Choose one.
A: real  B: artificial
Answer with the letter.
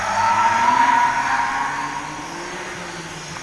A